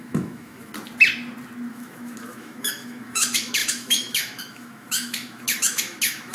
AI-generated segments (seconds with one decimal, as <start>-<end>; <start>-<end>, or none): 0.0-0.7; 1.7-6.3